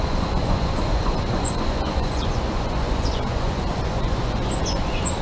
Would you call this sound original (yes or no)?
no